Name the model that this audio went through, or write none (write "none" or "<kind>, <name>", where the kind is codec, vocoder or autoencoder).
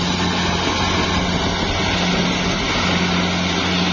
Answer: none